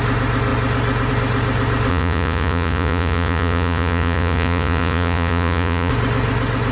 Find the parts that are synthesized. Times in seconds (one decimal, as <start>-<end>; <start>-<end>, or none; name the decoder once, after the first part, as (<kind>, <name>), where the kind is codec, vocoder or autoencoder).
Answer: 1.9-5.9 (vocoder, Vocos)